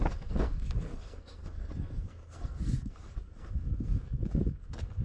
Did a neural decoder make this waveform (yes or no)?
yes